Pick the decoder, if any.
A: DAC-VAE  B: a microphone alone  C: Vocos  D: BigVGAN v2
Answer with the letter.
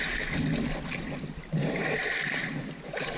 D